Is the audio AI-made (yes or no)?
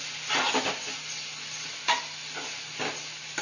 no